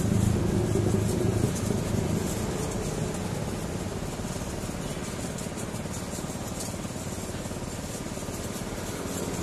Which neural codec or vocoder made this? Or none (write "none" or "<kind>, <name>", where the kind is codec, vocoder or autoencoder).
none